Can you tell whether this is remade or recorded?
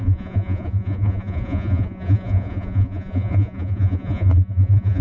remade